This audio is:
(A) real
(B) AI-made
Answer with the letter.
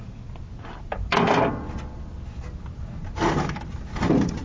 A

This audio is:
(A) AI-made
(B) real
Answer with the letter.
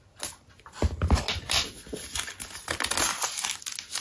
B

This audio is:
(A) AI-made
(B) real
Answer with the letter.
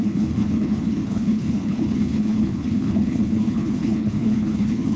A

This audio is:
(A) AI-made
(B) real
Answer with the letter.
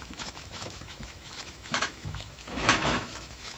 A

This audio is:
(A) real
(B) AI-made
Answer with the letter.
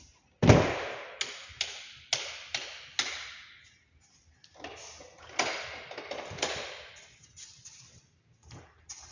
A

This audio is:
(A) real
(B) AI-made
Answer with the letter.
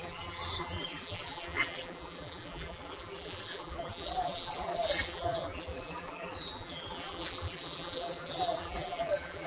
B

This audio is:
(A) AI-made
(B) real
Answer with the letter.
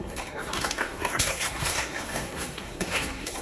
A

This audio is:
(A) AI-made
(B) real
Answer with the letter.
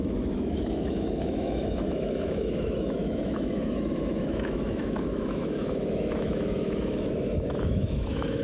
A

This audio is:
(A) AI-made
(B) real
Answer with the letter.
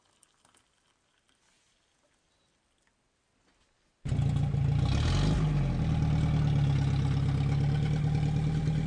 B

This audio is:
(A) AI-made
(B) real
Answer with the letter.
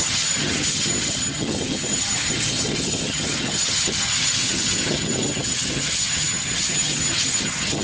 A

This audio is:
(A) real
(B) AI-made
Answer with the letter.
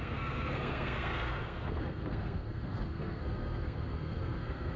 B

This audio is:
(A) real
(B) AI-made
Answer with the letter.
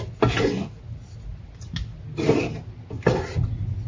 A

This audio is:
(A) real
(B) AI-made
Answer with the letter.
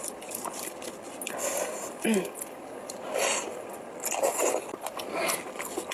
A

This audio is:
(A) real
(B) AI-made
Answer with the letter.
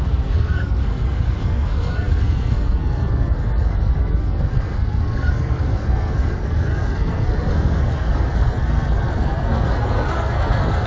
B